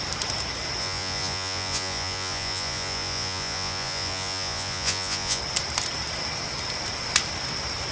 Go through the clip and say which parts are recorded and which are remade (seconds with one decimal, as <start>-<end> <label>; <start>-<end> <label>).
0.0-0.8 recorded; 0.8-5.4 remade; 5.4-7.9 recorded